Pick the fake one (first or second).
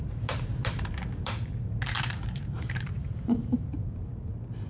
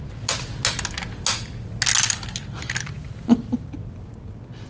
first